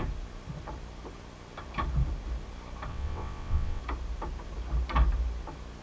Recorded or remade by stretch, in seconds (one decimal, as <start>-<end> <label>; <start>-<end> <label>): 0.0-2.9 recorded; 2.9-3.8 remade; 3.8-5.8 recorded